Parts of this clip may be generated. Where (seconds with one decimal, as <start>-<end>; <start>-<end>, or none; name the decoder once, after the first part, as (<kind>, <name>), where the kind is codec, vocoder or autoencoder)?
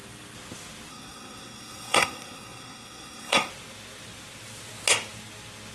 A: 0.9-3.5 (codec, SNAC)